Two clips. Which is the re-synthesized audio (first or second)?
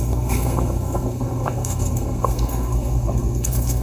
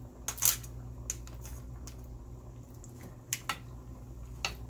first